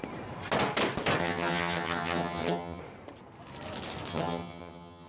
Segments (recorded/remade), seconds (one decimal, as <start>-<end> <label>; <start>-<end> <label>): 0.0-1.2 recorded; 1.2-2.8 remade; 2.8-4.1 recorded; 4.1-5.1 remade